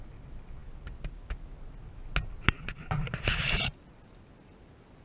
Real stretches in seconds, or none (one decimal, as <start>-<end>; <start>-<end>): 0.0-5.0